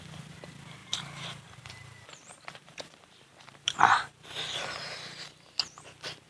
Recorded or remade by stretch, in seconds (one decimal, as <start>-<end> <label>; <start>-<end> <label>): 0.0-0.8 recorded; 0.8-4.2 remade; 4.2-6.3 recorded